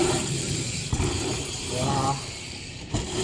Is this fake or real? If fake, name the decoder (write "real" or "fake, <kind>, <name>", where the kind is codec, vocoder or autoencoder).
fake, vocoder, BigVGAN v2